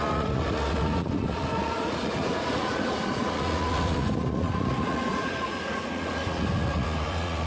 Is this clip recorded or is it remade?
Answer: remade